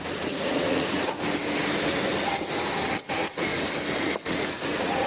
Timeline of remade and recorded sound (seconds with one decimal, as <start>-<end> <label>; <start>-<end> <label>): 0.0-1.1 remade; 1.1-3.0 recorded; 3.0-3.5 remade; 3.5-4.0 recorded; 4.0-5.1 remade

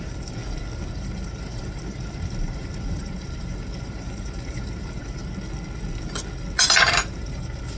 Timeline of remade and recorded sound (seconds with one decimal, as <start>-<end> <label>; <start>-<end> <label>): 0.0-0.4 remade; 0.4-0.9 recorded; 0.9-5.2 remade; 5.2-6.6 recorded; 6.6-7.8 remade

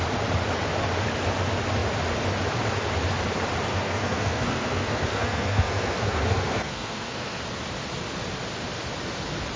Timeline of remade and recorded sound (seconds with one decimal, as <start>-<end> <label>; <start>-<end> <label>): 0.0-3.7 recorded; 3.7-7.4 remade; 7.4-9.6 recorded

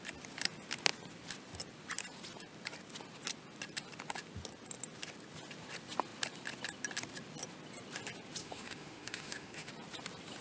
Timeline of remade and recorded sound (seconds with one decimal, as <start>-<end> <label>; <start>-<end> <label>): 0.0-8.4 recorded; 8.4-9.7 remade; 9.7-10.4 recorded

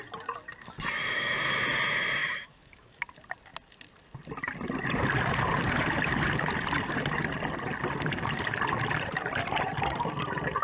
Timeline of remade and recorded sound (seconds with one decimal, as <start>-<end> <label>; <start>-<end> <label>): 0.0-2.2 recorded; 2.2-3.0 remade; 3.0-10.6 recorded

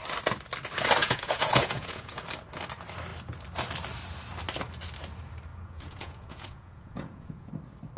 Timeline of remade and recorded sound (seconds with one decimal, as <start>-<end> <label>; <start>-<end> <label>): 0.0-1.0 recorded; 1.0-2.2 remade; 2.2-5.5 recorded; 5.5-7.5 remade; 7.5-8.0 recorded

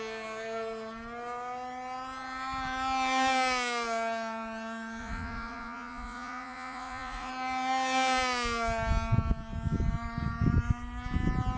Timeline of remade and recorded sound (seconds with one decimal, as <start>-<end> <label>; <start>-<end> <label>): 0.0-5.0 recorded; 5.0-7.3 remade; 7.3-11.6 recorded

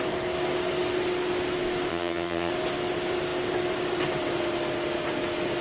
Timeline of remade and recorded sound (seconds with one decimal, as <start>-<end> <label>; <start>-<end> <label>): 0.0-1.9 recorded; 1.9-2.5 remade; 2.5-5.6 recorded